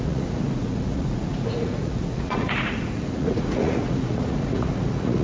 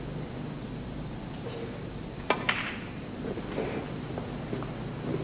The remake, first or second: first